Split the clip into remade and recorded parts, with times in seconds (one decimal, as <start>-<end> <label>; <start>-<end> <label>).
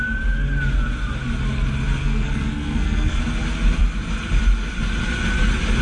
0.0-2.0 recorded; 2.0-3.2 remade; 3.2-5.8 recorded